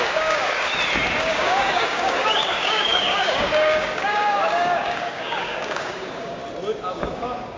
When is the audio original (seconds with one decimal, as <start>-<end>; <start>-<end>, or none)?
0.7-1.2; 6.4-6.9